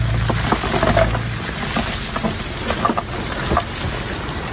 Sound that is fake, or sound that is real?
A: real